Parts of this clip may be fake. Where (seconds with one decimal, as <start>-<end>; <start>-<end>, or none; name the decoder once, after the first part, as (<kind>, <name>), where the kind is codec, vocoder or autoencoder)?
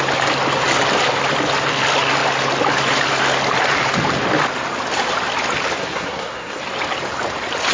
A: 5.8-6.6 (codec, SNAC)